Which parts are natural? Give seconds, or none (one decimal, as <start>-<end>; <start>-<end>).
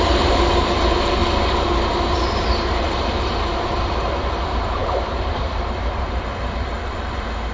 1.2-2.0